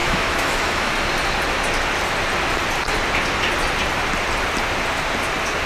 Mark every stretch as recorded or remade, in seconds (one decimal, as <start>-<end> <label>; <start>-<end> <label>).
0.0-0.9 remade; 0.9-5.7 recorded